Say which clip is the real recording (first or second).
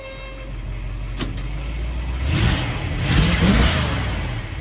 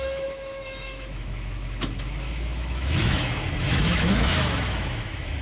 first